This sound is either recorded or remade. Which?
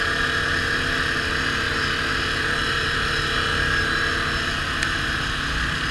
recorded